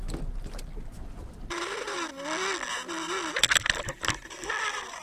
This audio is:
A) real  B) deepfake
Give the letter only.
A